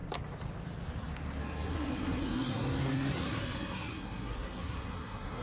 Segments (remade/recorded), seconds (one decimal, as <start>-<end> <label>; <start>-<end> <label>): 0.0-1.4 recorded; 1.4-5.4 remade